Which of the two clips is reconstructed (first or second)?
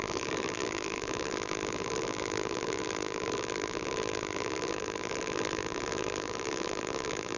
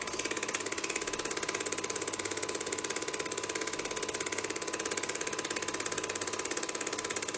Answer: first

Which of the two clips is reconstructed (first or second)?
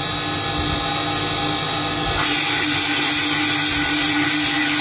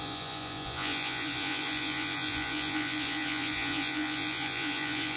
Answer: second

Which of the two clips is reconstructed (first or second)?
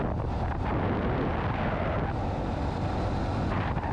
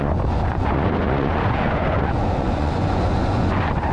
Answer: second